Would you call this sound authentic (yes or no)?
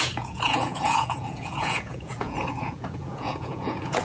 no